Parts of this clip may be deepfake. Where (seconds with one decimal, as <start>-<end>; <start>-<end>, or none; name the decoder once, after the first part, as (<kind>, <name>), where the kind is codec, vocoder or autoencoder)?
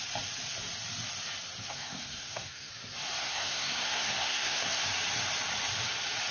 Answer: 1.7-2.7 (codec, SNAC); 3.2-4.8